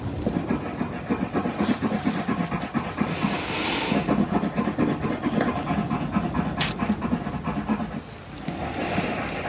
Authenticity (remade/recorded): recorded